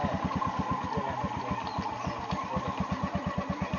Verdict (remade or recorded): recorded